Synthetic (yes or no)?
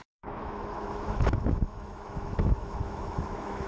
yes